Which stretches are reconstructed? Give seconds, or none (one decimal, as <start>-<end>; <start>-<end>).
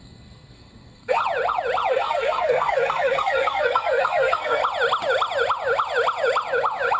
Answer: 0.0-1.2; 1.9-4.6